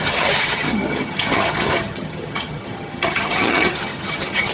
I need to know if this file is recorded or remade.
remade